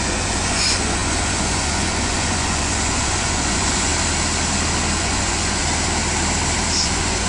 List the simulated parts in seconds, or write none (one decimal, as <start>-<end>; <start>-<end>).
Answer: 0.0-3.9; 5.0-5.6; 6.8-7.3